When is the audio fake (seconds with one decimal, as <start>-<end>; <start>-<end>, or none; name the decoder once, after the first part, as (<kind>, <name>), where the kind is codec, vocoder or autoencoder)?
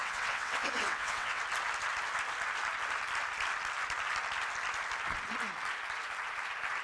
0.0-1.4 (vocoder, WaveNeXt)